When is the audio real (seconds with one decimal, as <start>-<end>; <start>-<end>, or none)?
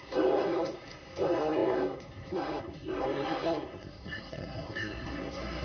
none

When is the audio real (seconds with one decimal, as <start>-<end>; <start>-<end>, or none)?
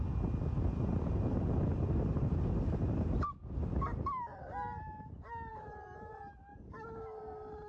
0.0-7.7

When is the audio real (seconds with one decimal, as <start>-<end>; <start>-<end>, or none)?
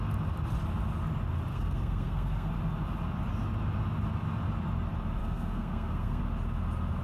0.0-1.5; 2.5-5.2; 6.2-7.0